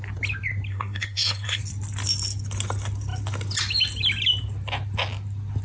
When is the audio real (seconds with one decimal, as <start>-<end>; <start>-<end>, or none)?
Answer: 0.0-0.7; 1.6-5.6